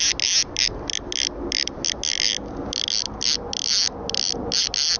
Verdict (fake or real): real